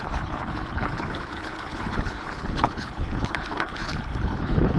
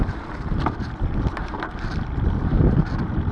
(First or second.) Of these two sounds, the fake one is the first